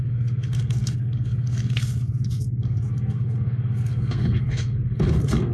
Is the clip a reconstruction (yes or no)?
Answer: yes